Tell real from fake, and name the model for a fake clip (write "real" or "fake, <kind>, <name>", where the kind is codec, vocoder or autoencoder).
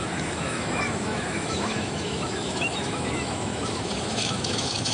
fake, autoencoder, DAC-VAE